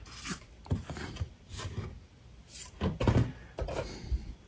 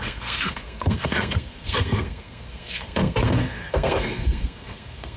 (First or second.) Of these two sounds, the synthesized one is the second